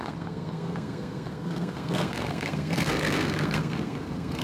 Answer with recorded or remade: remade